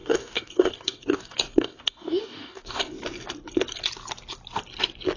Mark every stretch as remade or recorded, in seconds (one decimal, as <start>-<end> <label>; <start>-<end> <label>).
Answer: 0.0-2.8 remade; 2.8-5.2 recorded